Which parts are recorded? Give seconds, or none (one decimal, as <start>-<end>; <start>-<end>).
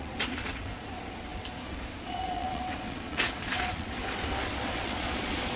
none